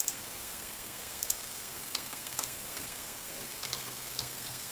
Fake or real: fake